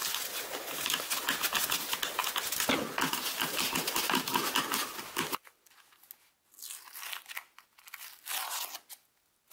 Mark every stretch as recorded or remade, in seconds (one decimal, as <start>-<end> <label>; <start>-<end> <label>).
0.0-9.5 recorded